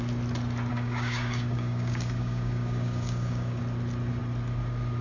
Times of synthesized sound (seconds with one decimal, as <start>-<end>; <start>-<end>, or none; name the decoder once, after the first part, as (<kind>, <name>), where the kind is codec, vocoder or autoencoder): 0.7-3.6 (codec, DAC)